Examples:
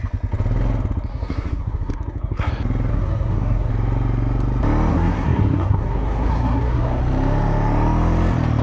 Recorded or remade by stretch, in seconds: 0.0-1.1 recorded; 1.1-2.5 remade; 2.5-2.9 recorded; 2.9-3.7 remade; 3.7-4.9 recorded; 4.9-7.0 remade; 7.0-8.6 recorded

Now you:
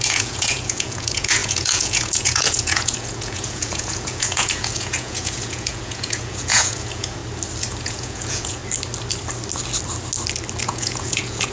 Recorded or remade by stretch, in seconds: 0.0-7.2 remade; 7.2-7.8 recorded; 7.8-8.6 remade; 8.6-10.6 recorded; 10.6-11.5 remade

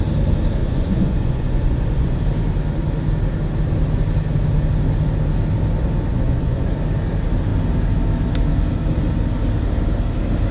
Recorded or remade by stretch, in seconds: 0.0-0.6 recorded; 0.6-2.2 remade; 2.2-6.1 recorded; 6.1-6.7 remade; 6.7-10.5 recorded

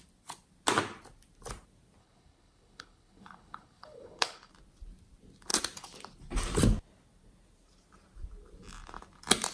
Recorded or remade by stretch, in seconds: 0.0-2.0 recorded; 2.0-4.5 remade; 4.5-9.5 recorded

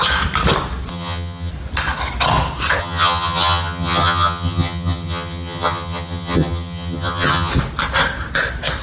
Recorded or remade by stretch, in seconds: 0.0-0.9 recorded; 0.9-1.5 remade; 1.5-2.8 recorded; 2.8-7.5 remade; 7.5-8.8 recorded

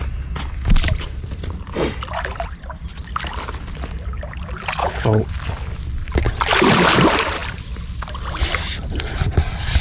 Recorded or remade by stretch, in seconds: 0.0-4.8 recorded; 4.8-5.3 remade; 5.3-9.8 recorded

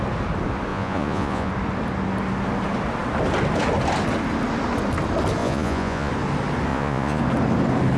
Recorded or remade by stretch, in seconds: 0.0-0.7 recorded; 0.7-1.5 remade; 1.5-5.4 recorded; 5.4-6.1 remade; 6.1-6.7 recorded; 6.7-7.2 remade; 7.2-8.0 recorded

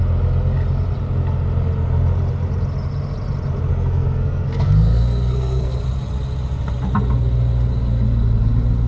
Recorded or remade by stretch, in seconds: 0.0-3.7 recorded; 3.7-5.8 remade; 5.8-8.9 recorded